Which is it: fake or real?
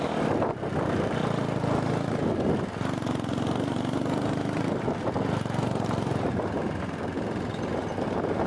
real